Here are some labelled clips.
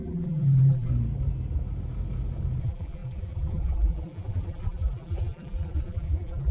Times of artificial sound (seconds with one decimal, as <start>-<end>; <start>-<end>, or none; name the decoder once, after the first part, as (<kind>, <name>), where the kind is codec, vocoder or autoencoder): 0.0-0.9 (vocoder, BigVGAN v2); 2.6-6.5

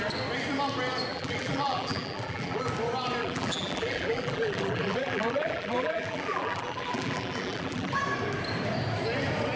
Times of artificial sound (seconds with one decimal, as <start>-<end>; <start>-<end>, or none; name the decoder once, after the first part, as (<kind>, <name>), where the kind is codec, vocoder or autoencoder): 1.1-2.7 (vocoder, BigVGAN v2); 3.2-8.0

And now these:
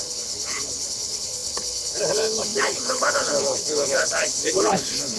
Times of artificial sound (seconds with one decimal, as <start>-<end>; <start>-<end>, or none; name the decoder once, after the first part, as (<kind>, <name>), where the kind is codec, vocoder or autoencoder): 0.0-5.2 (codec, HILCodec)

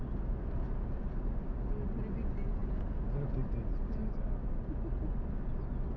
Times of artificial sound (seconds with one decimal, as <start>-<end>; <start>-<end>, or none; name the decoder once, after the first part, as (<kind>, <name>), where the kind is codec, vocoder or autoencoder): none

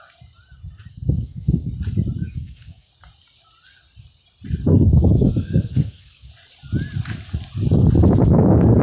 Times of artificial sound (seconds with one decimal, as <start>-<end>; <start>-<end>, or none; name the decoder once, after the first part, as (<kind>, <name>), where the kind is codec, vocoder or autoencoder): 0.9-1.7 (codec, SNAC); 2.2-2.9; 4.7-6.3